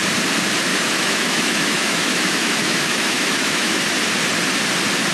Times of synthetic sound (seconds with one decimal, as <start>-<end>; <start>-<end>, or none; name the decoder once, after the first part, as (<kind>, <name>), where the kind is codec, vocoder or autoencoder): 0.7-3.8 (autoencoder, DAC-VAE)